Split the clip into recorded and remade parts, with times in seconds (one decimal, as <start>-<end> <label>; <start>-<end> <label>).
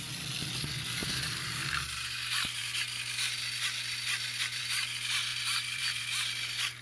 0.0-5.3 recorded; 5.3-6.0 remade; 6.0-6.8 recorded